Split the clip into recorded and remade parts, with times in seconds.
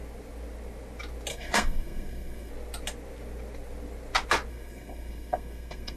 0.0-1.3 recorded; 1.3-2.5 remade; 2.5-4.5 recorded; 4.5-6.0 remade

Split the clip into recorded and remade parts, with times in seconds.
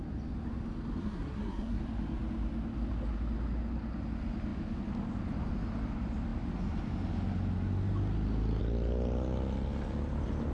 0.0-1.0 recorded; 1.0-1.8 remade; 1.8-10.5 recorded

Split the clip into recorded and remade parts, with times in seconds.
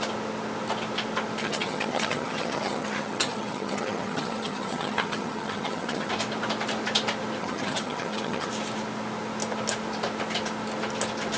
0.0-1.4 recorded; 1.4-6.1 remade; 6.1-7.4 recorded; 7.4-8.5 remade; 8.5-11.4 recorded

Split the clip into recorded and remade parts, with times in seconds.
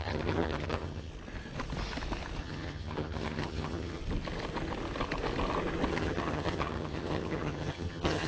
0.0-1.1 remade; 1.1-2.4 recorded; 2.4-4.0 remade; 4.0-5.9 recorded; 5.9-8.3 remade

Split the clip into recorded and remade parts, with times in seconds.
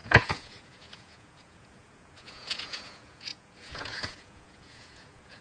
0.0-5.4 remade